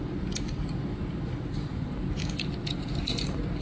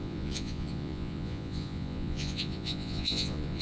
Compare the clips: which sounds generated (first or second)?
second